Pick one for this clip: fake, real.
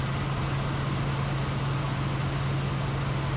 real